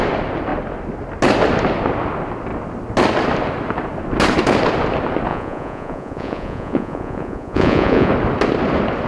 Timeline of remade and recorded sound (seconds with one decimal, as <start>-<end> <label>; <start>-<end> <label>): 0.0-5.3 recorded; 5.3-8.1 remade; 8.1-9.1 recorded